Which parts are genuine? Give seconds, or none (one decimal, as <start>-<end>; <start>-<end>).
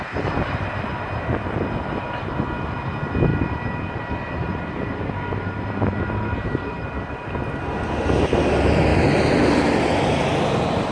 0.0-3.3; 7.6-8.9; 10.0-10.9